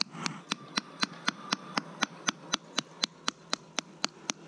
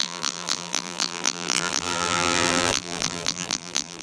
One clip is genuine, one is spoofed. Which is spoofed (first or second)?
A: second